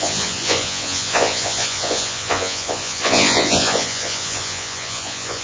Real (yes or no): no